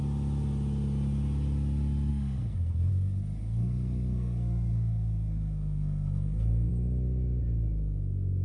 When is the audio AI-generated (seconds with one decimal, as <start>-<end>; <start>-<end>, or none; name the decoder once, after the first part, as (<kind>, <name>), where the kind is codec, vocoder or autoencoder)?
2.1-2.9 (codec, SNAC); 3.4-6.7